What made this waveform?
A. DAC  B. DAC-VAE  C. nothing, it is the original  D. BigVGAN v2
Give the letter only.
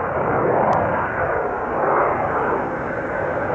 A